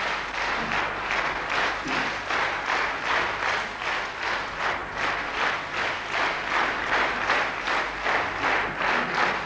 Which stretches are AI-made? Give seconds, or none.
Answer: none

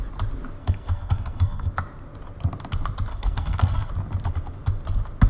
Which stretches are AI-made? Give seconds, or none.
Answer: 0.6-1.7 (codec, SNAC); 3.1-3.9

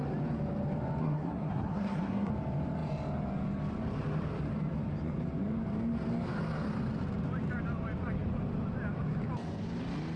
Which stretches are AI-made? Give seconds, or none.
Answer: 1.0-2.3 (codec, SNAC)

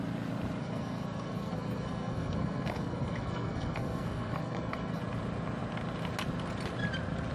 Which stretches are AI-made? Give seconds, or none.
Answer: 0.6-5.0 (codec, SNAC)

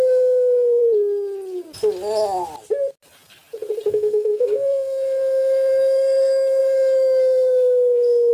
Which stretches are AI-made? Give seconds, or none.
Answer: 0.0-0.8 (codec, SNAC); 3.9-8.3

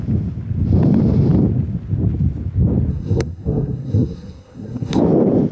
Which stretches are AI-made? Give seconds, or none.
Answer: 2.9-5.0 (codec, SNAC)